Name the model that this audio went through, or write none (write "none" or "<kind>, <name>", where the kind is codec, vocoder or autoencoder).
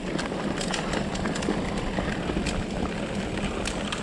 none